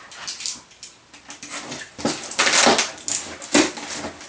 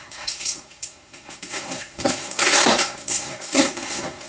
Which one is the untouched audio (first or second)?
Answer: first